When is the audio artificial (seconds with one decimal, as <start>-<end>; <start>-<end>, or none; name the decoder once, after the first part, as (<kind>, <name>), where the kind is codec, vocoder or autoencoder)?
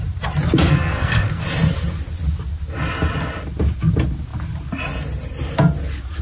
0.6-1.4 (codec, SNAC)